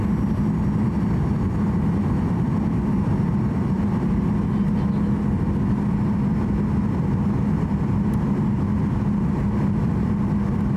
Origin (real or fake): real